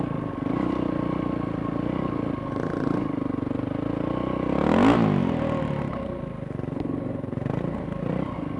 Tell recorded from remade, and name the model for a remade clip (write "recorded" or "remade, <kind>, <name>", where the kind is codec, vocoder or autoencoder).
recorded